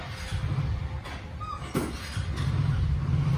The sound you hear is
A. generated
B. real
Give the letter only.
B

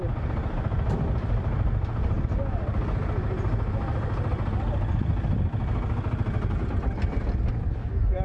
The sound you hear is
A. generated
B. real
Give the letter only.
B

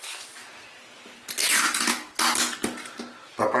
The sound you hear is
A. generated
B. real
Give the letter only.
B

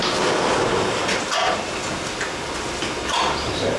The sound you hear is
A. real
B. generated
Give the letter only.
A